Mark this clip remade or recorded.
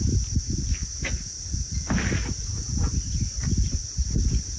recorded